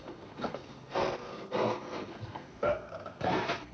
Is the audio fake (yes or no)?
yes